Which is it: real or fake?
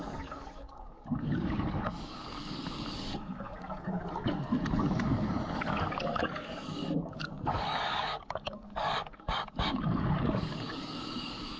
fake